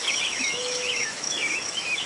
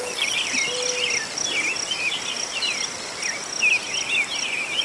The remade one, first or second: first